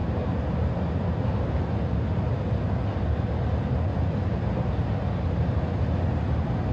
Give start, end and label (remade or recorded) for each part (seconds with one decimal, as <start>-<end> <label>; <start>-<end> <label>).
0.0-3.9 recorded; 3.9-4.7 remade; 4.7-6.7 recorded